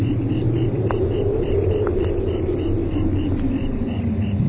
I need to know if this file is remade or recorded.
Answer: recorded